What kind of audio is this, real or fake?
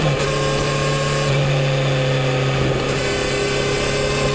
real